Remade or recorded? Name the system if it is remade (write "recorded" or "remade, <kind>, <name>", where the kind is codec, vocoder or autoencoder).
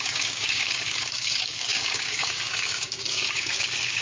remade, codec, DAC